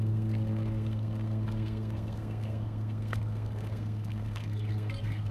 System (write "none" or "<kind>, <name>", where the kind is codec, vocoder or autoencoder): codec, SNAC